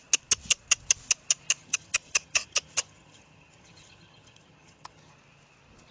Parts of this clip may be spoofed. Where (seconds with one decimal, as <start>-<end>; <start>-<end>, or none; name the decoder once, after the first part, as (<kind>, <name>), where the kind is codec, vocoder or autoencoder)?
1.6-5.1 (vocoder, HiFi-GAN)